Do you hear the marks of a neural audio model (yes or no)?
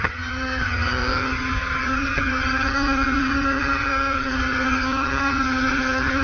yes